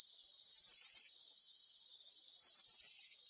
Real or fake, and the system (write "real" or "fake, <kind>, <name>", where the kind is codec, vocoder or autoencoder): real